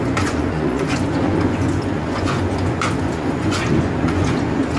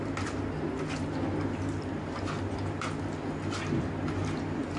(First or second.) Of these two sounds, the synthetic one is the first